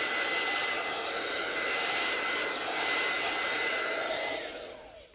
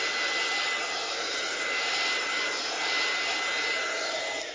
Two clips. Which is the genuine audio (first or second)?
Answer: second